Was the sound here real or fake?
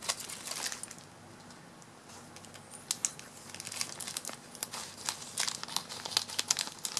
real